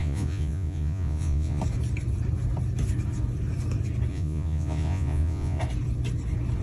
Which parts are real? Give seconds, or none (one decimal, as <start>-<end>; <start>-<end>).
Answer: 1.6-4.1; 5.6-6.6